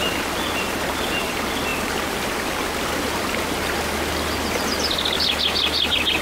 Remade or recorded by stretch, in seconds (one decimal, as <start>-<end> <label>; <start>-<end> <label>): 0.0-6.2 recorded